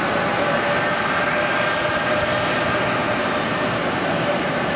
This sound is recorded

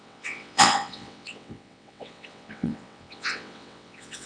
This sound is remade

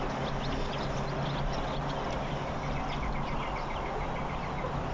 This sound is recorded